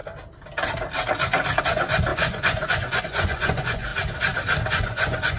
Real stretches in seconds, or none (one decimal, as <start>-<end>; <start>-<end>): 0.0-1.6; 3.9-4.7